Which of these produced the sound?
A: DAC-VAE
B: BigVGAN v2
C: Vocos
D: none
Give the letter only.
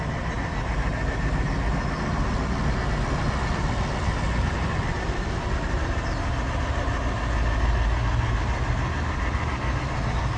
D